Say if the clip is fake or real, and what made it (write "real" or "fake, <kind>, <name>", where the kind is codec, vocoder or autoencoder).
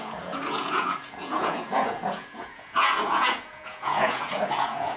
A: fake, vocoder, Vocos